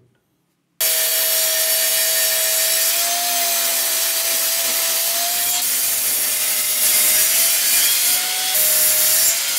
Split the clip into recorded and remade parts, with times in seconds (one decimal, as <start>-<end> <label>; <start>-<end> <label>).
0.0-3.7 recorded; 3.7-6.8 remade; 6.8-9.6 recorded